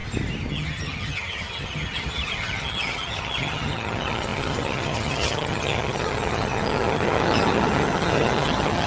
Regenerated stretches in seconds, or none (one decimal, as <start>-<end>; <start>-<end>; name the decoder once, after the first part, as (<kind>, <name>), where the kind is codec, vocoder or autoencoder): 0.5-8.9 (vocoder, HiFi-GAN)